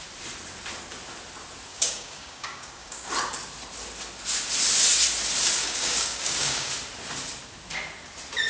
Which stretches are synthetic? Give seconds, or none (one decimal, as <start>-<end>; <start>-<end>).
1.7-3.1; 5.6-6.7